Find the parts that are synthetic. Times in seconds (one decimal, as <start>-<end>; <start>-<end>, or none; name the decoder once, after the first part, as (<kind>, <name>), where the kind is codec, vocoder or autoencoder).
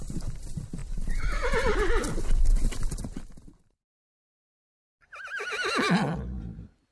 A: none